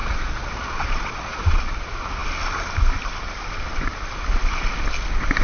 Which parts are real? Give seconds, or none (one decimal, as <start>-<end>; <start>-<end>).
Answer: 1.6-5.4